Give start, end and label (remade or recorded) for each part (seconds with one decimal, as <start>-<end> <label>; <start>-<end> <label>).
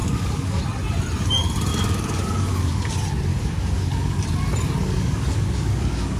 0.0-0.6 remade; 0.6-1.7 recorded; 1.7-2.9 remade; 2.9-3.3 recorded; 3.3-4.2 remade; 4.2-4.8 recorded; 4.8-6.2 remade